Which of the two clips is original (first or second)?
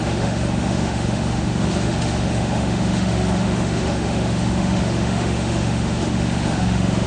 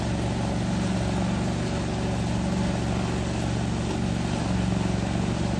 second